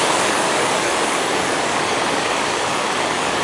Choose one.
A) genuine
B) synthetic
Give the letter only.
B